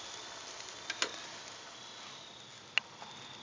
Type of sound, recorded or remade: recorded